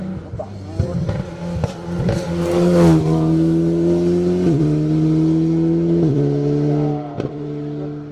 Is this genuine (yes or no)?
yes